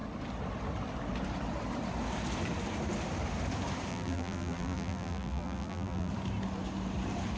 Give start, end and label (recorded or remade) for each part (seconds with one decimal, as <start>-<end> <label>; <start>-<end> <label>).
0.0-3.9 recorded; 3.9-6.1 remade; 6.1-7.4 recorded